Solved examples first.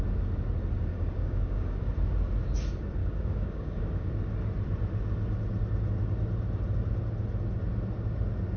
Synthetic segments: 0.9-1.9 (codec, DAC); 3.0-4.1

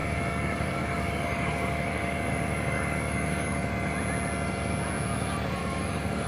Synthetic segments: 0.0-3.7 (codec, DAC); 5.6-6.3

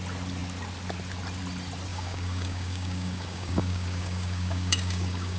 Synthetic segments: 1.9-5.4 (codec, DAC)

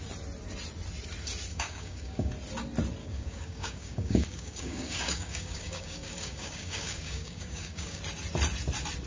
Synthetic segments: 1.5-2.3 (codec, DAC); 3.0-8.0

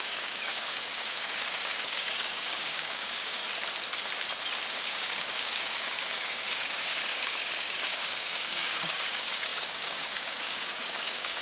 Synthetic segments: 0.0-3.4 (codec, DAC); 4.8-11.4

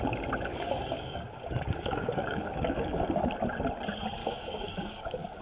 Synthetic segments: 0.5-3.3 (codec, DAC); 4.2-5.4

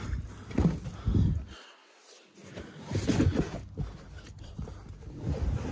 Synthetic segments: none